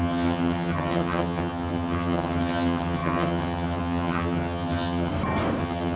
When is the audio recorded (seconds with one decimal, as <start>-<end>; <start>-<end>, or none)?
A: 5.1-5.6